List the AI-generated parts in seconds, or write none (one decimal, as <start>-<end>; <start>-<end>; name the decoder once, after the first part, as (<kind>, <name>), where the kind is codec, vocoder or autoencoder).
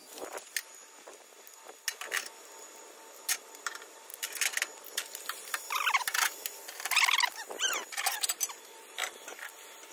none